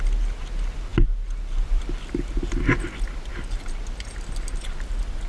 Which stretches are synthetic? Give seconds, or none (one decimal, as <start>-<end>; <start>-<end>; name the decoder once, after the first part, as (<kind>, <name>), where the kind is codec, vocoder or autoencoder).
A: none